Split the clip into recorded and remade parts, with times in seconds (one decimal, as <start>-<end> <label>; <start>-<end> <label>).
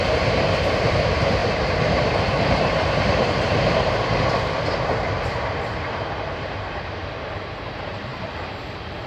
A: 0.0-8.1 remade; 8.1-9.1 recorded